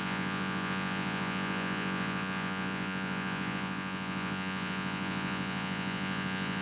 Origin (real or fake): fake